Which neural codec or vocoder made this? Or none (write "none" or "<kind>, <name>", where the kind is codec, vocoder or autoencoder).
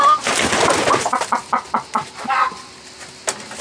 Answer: none